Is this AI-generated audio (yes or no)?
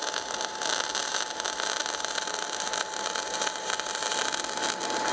no